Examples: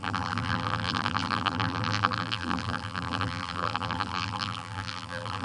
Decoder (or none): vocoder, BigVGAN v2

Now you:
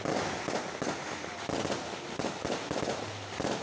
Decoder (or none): none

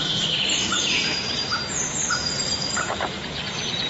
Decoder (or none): vocoder, BigVGAN v2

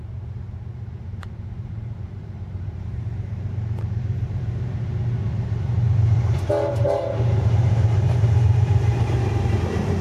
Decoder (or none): vocoder, BigVGAN v2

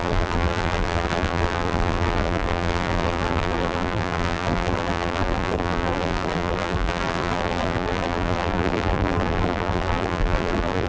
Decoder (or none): vocoder, BigVGAN v2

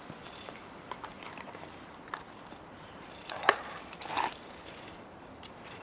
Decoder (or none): vocoder, BigVGAN v2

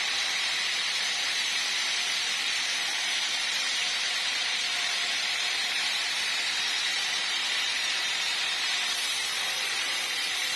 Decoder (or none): vocoder, BigVGAN v2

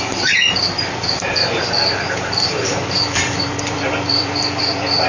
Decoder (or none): vocoder, BigVGAN v2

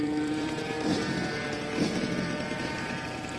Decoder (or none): vocoder, BigVGAN v2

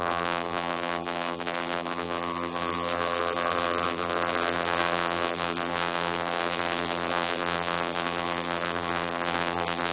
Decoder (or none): vocoder, BigVGAN v2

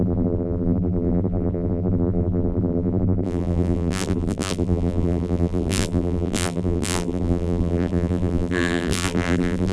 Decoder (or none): vocoder, BigVGAN v2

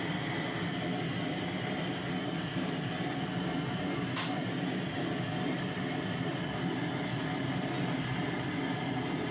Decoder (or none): none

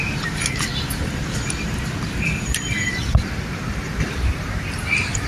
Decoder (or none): vocoder, BigVGAN v2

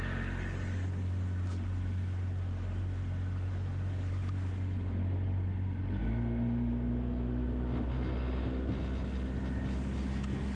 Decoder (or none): none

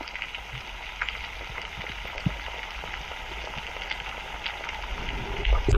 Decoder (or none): none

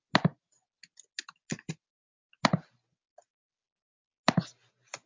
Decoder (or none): none